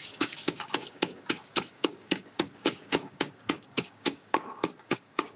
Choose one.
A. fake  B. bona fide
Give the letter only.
A